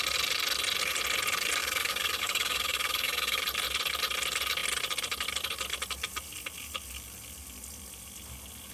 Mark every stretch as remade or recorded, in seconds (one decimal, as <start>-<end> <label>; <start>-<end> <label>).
0.0-1.6 recorded; 1.6-3.4 remade; 3.4-8.7 recorded